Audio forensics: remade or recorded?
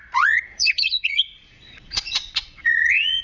remade